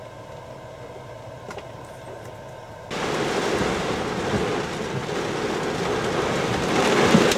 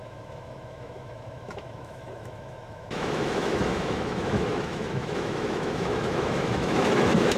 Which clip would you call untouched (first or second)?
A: first